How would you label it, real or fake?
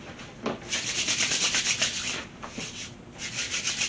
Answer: real